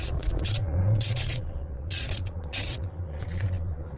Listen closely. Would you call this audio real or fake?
fake